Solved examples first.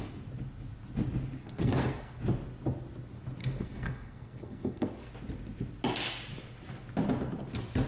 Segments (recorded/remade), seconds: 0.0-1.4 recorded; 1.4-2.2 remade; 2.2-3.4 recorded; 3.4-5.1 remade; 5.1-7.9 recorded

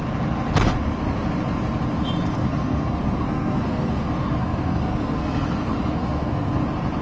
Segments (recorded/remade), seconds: 0.0-2.4 recorded; 2.4-6.6 remade; 6.6-7.0 recorded

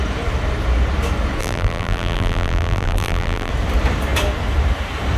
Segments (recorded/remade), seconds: 0.0-1.4 recorded; 1.4-3.5 remade; 3.5-5.2 recorded